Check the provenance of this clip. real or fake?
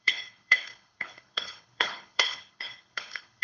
fake